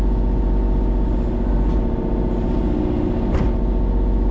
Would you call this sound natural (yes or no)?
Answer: yes